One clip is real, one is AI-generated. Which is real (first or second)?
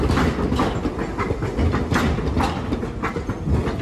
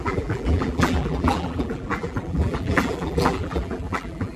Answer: first